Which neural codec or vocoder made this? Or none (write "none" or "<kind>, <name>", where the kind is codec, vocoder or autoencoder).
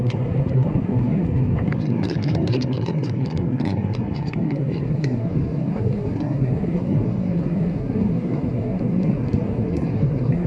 codec, SNAC